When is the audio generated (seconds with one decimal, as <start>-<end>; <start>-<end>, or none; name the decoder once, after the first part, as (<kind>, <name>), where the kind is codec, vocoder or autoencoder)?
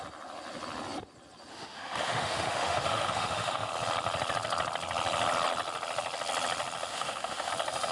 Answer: 1.5-3.7 (autoencoder, DAC-VAE); 6.9-7.5